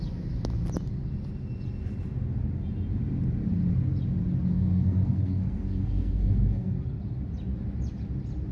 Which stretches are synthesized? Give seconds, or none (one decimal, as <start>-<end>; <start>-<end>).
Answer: 4.5-6.8